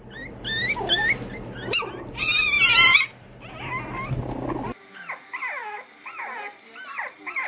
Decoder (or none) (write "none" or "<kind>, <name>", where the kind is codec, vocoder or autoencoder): none